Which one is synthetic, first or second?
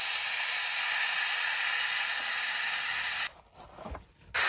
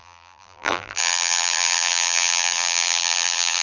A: second